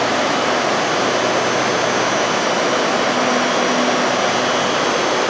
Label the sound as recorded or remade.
recorded